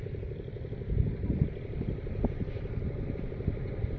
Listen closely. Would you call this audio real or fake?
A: fake